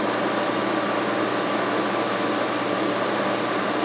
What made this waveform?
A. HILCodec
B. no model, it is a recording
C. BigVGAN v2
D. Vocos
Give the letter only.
B